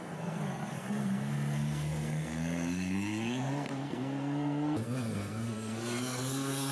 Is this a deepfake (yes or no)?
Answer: yes